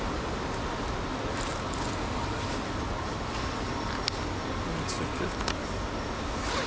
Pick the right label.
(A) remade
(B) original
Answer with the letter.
B